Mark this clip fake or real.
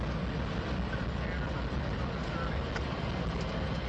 real